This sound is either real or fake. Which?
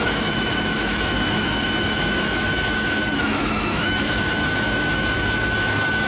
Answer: fake